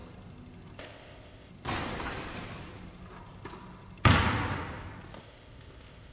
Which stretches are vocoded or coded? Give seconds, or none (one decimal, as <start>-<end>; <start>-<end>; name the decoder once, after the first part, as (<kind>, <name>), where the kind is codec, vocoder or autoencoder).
0.8-1.5 (codec, ZipCodec); 5.2-6.1

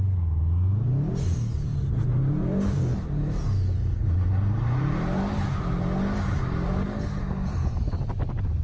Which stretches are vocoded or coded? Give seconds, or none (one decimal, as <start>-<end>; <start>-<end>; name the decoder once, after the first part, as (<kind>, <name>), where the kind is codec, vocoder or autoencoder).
none

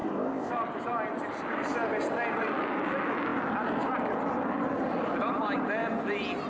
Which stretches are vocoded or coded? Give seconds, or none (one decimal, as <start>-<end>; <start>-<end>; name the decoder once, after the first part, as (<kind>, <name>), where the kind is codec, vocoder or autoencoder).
0.0-0.5 (codec, ZipCodec)

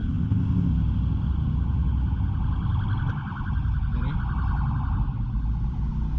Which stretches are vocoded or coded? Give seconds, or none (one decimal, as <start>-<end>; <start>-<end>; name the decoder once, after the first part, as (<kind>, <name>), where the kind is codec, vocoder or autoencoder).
0.0-0.7 (codec, ZipCodec)

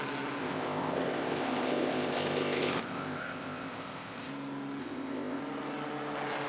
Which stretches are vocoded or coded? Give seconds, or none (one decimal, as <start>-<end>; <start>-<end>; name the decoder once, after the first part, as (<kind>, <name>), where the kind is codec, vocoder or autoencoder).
0.4-4.3 (codec, ZipCodec); 4.8-5.4

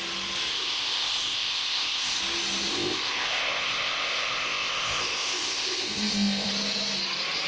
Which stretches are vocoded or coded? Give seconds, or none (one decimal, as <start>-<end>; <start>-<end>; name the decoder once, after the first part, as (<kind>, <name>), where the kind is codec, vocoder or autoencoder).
0.5-2.2 (codec, ZipCodec); 2.7-6.5

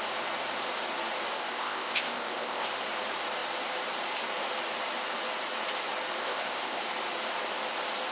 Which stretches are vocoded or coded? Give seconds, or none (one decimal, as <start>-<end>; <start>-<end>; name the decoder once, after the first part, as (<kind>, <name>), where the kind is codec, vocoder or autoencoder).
1.3-2.7 (codec, ZipCodec); 6.2-6.8

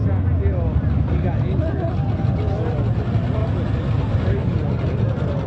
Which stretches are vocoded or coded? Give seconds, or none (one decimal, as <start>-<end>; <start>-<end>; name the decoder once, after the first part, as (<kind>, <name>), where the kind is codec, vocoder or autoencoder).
none